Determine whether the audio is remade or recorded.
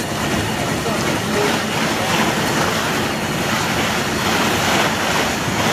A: recorded